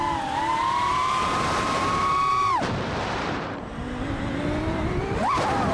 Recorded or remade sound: remade